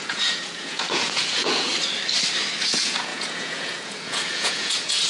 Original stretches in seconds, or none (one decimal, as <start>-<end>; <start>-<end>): 1.7-2.6